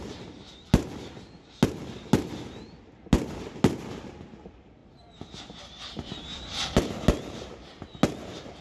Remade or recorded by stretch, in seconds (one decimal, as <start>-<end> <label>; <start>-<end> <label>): 0.0-8.6 recorded